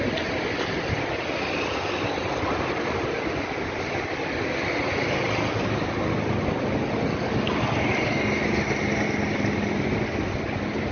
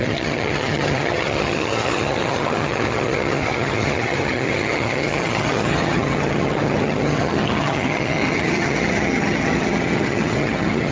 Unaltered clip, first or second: first